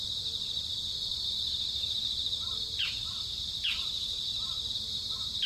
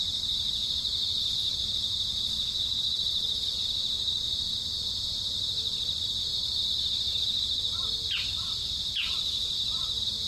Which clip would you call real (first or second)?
second